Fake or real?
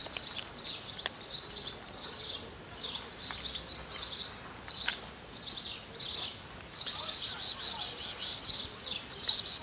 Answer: real